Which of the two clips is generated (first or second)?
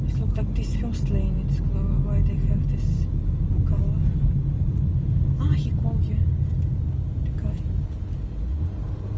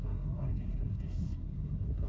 second